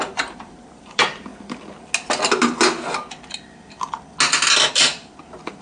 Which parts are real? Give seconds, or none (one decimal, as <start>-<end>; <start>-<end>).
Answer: 1.3-4.7